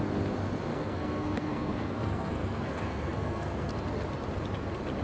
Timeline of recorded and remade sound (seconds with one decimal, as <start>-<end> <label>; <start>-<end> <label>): 0.0-0.7 recorded; 0.7-3.7 remade; 3.7-5.0 recorded